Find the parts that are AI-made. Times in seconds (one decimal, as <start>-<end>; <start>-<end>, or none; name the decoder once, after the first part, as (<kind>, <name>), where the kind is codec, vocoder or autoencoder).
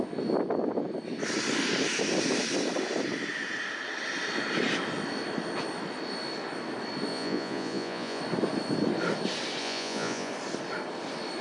7.1-8.2 (vocoder, Vocos); 9.6-10.3